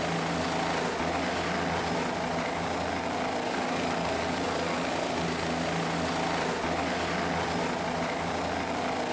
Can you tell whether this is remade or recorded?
recorded